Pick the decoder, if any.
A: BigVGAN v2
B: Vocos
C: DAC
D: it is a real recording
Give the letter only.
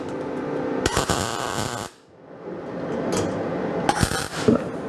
D